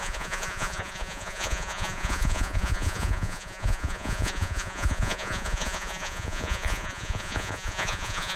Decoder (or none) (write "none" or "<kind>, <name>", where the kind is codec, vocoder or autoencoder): vocoder, Vocos